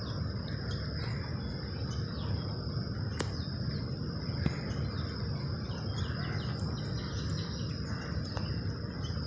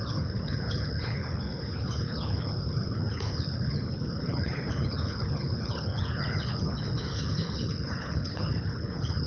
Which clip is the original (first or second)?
first